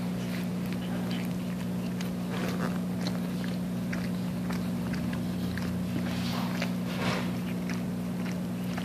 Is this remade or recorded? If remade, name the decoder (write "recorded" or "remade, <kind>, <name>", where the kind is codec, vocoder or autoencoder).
recorded